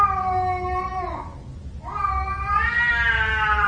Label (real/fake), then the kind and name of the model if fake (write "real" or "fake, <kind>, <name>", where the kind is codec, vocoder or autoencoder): real